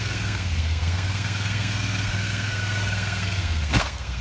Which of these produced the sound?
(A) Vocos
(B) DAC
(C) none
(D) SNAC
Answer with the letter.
D